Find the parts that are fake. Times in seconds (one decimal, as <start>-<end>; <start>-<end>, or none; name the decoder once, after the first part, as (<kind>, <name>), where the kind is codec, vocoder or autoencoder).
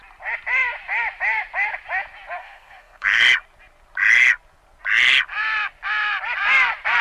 2.4-3.2 (codec, SNAC)